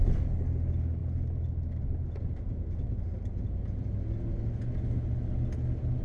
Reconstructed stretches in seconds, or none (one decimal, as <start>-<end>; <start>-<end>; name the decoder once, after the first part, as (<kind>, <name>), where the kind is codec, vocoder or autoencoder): none